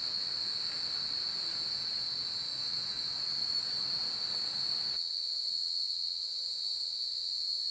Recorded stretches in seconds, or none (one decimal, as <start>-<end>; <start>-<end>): 0.0-2.5; 3.6-7.7